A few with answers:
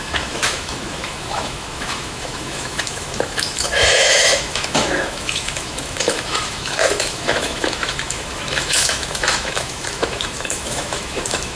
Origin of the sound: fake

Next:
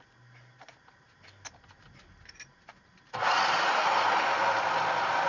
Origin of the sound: real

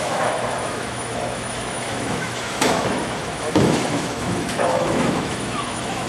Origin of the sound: fake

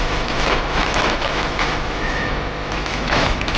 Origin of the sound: fake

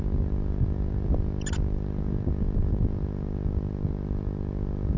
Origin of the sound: real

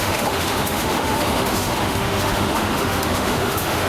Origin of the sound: fake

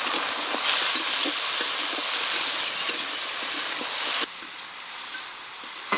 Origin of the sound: real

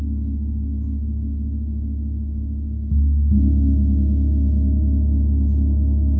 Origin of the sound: real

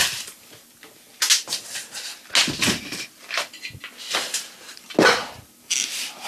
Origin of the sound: real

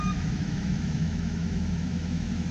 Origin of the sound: fake